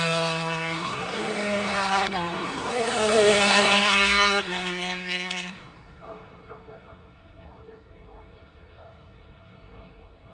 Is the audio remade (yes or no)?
yes